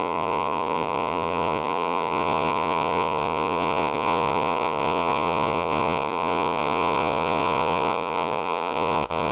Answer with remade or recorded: remade